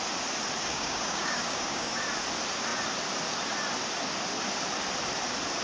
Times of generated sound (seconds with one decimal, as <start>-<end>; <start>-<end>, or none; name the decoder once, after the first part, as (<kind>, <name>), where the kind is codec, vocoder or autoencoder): 0.7-2.0 (codec, DAC)

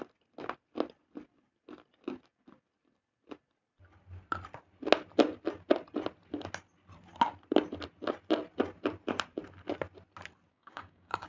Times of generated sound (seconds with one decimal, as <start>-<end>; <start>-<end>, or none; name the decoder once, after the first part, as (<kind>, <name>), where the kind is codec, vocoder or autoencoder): 10.5-11.3 (codec, DAC)

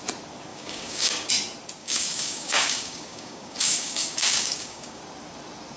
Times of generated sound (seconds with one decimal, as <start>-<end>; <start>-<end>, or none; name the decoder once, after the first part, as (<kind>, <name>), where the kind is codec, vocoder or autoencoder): 0.5-1.3 (codec, DAC); 1.8-5.0

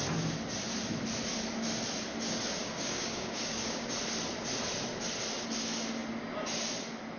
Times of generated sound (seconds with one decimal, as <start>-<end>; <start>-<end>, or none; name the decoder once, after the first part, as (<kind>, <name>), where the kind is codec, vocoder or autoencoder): 2.6-3.9 (codec, DAC)

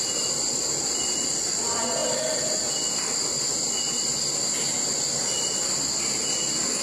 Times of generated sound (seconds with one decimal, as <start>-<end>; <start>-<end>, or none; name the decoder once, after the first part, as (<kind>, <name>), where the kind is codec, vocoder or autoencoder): none

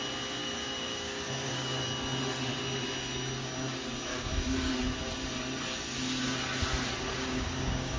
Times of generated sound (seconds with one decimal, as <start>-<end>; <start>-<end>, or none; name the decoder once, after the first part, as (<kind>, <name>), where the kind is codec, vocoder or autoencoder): 0.4-1.8 (codec, DAC); 4.1-4.7; 7.1-8.0

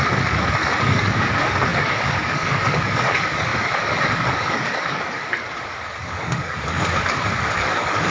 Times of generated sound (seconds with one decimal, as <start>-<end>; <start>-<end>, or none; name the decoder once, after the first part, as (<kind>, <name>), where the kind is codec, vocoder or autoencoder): 0.0-8.1 (codec, DAC)

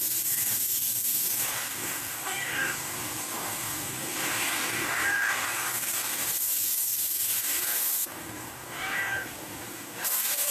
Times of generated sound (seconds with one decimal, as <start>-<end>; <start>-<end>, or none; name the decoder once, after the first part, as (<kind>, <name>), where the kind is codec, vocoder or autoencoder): 0.0-10.5 (codec, DAC)